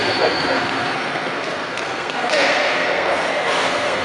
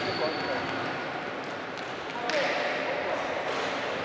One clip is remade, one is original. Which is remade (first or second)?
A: first